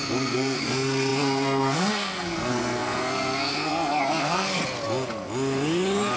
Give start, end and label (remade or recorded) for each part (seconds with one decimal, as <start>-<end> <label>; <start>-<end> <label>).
0.0-4.6 remade; 4.6-6.2 recorded